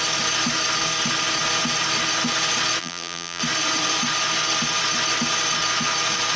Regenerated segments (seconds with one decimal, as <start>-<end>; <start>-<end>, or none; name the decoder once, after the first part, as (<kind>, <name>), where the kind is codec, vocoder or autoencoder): 2.8-3.4 (vocoder, BigVGAN v2)